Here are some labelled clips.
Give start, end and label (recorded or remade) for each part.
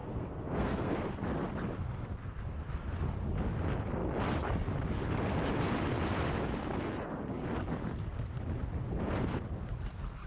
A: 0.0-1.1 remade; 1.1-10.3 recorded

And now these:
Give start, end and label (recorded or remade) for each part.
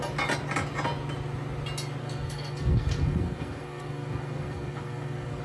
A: 0.0-2.0 recorded; 2.0-5.4 remade